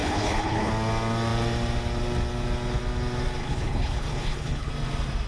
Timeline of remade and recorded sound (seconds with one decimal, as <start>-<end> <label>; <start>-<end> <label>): 0.0-0.7 remade; 0.7-3.4 recorded; 3.4-4.7 remade; 4.7-5.3 recorded